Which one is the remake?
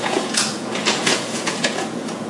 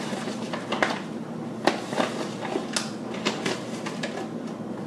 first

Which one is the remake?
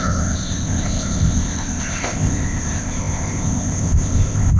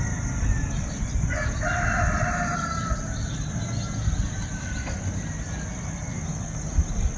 first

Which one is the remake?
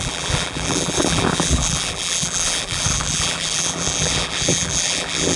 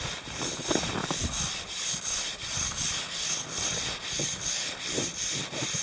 first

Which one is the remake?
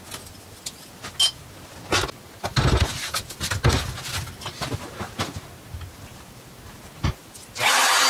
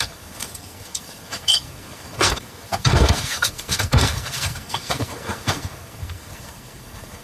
second